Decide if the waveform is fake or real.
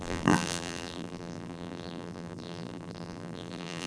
fake